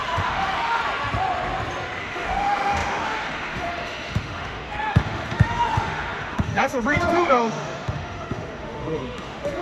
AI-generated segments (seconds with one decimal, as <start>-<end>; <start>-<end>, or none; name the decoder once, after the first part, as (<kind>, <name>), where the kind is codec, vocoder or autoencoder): 0.0-0.8 (autoencoder, DAC-VAE); 2.0-9.6